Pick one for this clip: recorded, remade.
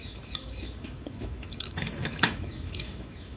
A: remade